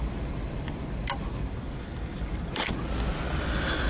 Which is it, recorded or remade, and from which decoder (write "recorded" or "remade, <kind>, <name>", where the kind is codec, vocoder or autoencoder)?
recorded